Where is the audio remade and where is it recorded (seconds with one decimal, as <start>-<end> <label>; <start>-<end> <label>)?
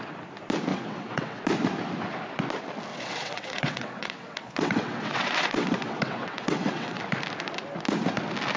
0.0-0.7 recorded; 0.7-1.4 remade; 1.4-2.9 recorded; 2.9-7.0 remade; 7.0-8.6 recorded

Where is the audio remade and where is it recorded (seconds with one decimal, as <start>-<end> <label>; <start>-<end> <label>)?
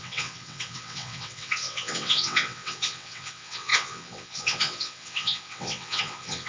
0.0-6.5 remade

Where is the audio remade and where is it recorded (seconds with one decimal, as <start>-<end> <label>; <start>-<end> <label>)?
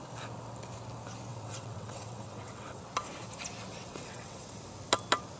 0.0-1.3 recorded; 1.3-2.8 remade; 2.8-3.7 recorded; 3.7-4.6 remade; 4.6-5.4 recorded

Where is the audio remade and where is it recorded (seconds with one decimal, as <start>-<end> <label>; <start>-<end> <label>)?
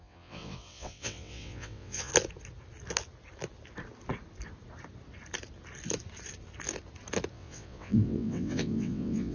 0.0-2.1 remade; 2.1-7.3 recorded; 7.3-9.3 remade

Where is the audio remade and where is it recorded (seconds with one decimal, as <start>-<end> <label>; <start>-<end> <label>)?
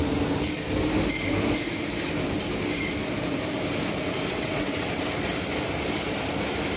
0.0-4.3 recorded; 4.3-5.0 remade; 5.0-6.8 recorded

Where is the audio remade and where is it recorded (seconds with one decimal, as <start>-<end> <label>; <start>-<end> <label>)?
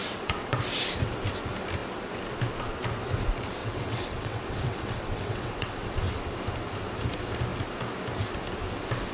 0.0-0.6 remade; 0.6-3.6 recorded; 3.6-6.0 remade; 6.0-9.1 recorded